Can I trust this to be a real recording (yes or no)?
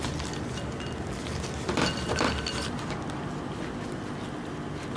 yes